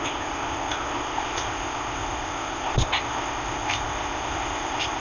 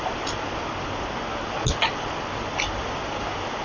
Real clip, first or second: second